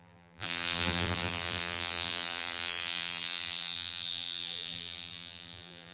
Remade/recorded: remade